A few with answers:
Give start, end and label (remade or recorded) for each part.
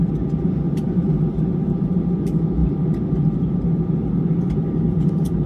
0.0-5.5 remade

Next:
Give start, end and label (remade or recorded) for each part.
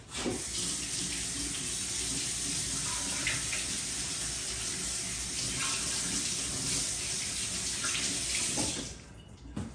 0.0-9.7 recorded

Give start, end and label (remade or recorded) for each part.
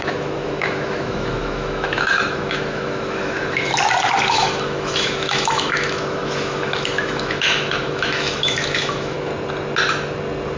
0.0-3.7 remade; 3.7-4.3 recorded; 4.3-9.3 remade; 9.3-10.6 recorded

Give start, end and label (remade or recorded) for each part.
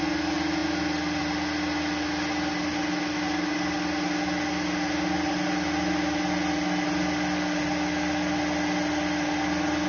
0.0-9.9 recorded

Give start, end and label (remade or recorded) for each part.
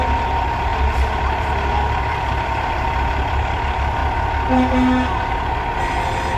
0.0-4.0 remade; 4.0-5.8 recorded; 5.8-6.4 remade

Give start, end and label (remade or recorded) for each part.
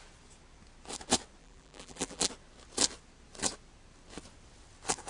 0.0-1.4 recorded; 1.4-2.3 remade; 2.3-5.1 recorded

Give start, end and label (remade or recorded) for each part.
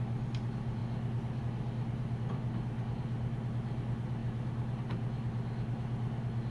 0.0-6.5 recorded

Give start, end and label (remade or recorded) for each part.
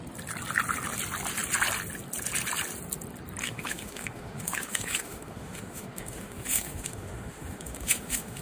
0.0-3.4 recorded; 3.4-8.4 remade